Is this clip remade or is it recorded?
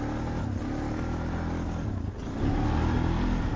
recorded